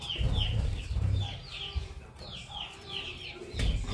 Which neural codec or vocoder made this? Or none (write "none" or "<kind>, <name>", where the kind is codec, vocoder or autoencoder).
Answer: vocoder, BigVGAN v2